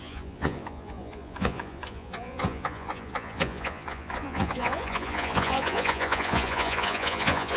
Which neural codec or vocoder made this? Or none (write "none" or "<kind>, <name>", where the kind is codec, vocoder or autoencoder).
vocoder, Vocos